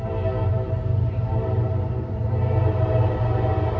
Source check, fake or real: real